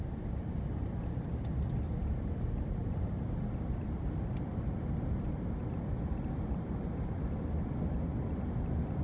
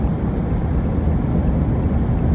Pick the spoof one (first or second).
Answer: first